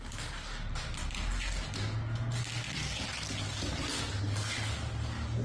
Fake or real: real